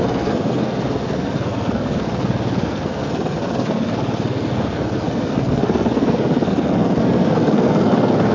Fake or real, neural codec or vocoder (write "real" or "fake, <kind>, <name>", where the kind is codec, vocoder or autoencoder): fake, codec, SNAC